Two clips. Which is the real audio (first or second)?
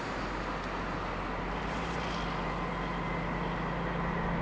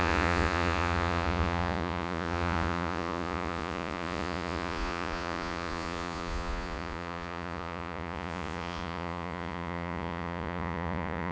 first